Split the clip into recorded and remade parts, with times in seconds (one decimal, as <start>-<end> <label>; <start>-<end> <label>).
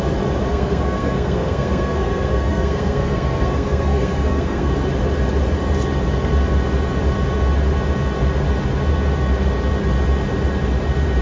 0.0-0.4 recorded; 0.4-4.7 remade; 4.7-11.2 recorded